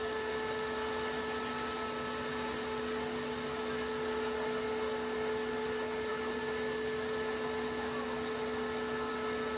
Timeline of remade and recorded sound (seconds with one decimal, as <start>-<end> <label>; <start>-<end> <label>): 0.0-9.6 recorded